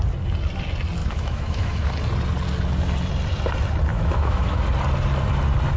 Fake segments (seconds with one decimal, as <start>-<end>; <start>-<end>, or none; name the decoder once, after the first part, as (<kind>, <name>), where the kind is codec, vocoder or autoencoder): 1.0-1.9 (autoencoder, DAC-VAE); 3.9-4.6